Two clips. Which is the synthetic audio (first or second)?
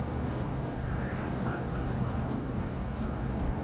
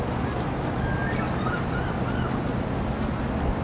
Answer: first